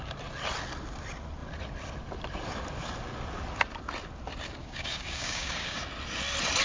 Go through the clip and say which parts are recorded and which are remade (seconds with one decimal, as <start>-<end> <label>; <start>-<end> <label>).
0.0-4.6 recorded; 4.6-5.8 remade; 5.8-6.6 recorded